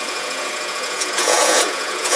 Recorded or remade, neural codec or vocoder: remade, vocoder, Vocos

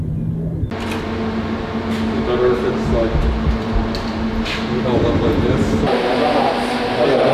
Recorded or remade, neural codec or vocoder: recorded